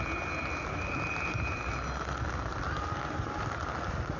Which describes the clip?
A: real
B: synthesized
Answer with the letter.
A